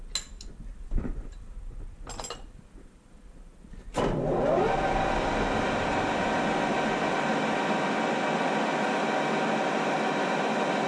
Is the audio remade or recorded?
recorded